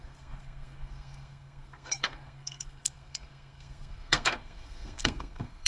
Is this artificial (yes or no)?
yes